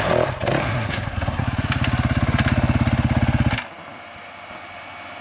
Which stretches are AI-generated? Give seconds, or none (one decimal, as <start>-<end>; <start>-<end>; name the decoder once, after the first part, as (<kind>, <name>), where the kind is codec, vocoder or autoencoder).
0.6-1.4 (codec, SNAC)